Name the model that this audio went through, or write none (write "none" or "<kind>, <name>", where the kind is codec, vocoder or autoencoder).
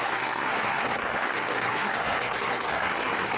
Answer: codec, SNAC